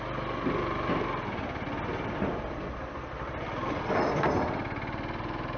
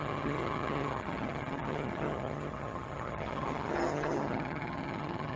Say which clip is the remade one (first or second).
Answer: second